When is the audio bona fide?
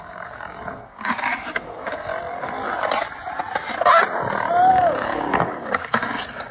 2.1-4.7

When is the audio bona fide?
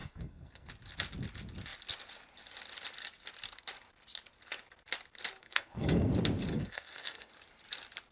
0.7-5.4; 6.1-6.5; 7.3-8.1